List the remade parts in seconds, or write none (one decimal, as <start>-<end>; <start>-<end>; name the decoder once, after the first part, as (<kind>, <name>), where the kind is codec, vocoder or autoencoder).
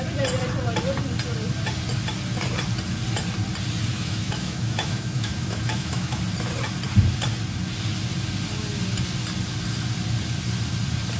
3.9-6.2 (autoencoder, DAC-VAE)